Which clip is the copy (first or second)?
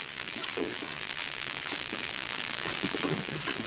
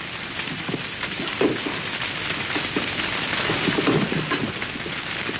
first